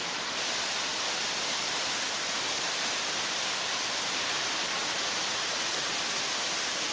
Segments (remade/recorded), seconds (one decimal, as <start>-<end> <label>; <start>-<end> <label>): 0.0-4.8 recorded; 4.8-5.7 remade; 5.7-6.9 recorded